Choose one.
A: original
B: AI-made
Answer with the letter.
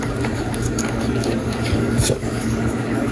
B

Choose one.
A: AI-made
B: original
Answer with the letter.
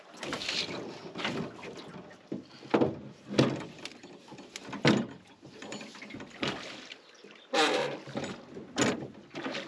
B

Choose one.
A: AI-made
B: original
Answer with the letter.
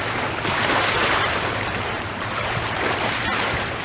A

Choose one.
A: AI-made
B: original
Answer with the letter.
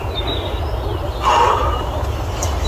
B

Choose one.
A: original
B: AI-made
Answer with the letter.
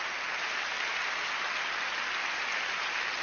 A